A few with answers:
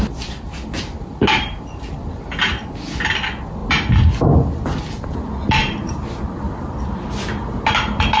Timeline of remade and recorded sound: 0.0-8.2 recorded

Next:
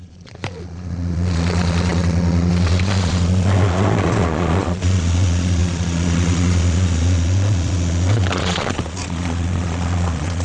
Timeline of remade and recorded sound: 0.0-10.4 remade

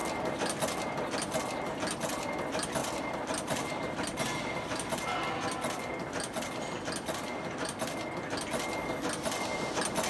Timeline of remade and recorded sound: 0.0-2.8 recorded; 2.8-3.8 remade; 3.8-10.1 recorded

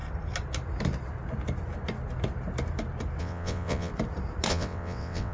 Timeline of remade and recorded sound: 0.0-3.2 recorded; 3.2-3.9 remade; 3.9-4.5 recorded; 4.5-5.3 remade

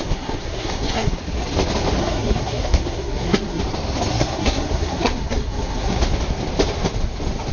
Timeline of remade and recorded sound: 0.0-1.2 remade; 1.2-2.0 recorded; 2.0-3.6 remade; 3.6-4.1 recorded; 4.1-6.0 remade; 6.0-7.5 recorded